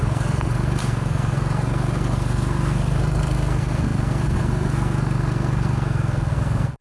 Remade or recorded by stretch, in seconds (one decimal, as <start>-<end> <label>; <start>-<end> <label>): 0.0-6.8 remade